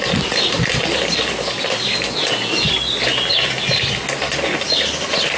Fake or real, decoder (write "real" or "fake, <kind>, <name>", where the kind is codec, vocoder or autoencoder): real